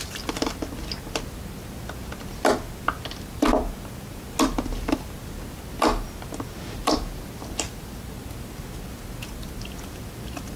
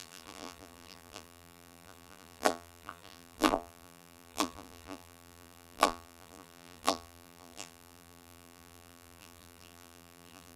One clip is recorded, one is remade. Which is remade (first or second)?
second